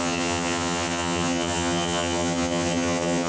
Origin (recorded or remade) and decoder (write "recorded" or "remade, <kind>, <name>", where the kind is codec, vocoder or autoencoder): remade, vocoder, HiFi-GAN